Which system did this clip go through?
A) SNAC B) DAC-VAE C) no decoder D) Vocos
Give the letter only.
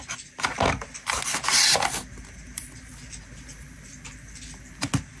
C